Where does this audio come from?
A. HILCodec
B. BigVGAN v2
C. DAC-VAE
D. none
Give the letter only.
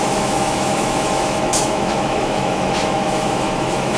C